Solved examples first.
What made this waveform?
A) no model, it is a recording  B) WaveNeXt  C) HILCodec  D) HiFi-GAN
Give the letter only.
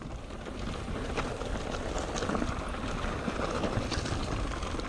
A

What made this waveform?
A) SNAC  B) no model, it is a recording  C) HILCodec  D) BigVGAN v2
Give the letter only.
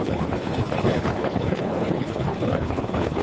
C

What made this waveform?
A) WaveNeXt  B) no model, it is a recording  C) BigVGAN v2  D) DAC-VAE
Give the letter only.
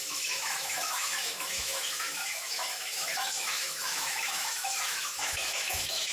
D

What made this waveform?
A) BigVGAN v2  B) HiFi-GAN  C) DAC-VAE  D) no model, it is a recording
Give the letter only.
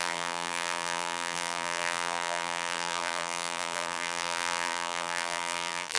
A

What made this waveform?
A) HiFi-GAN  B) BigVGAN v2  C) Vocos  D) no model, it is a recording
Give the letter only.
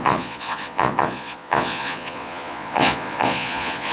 C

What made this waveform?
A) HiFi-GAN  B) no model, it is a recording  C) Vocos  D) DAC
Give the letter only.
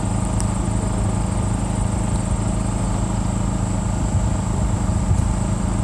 B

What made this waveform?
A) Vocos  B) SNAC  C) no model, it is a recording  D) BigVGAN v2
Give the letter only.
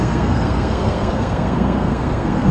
B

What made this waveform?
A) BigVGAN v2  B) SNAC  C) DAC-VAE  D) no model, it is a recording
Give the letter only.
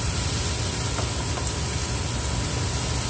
D